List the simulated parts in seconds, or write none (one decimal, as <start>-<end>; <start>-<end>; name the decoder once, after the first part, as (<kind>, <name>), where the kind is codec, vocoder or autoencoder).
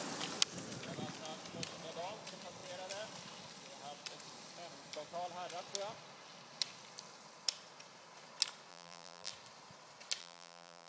8.7-9.3 (vocoder, BigVGAN v2); 10.2-10.9